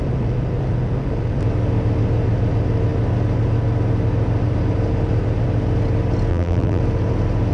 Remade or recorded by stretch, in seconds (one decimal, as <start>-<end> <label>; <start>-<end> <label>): 0.0-6.3 recorded; 6.3-6.8 remade; 6.8-7.5 recorded